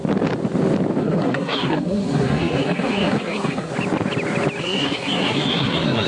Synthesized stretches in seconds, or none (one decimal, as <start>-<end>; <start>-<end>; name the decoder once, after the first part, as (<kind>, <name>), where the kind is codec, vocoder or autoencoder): 1.0-3.7 (codec, SNAC); 4.6-6.1